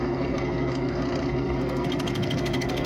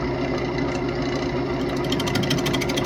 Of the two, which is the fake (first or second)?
first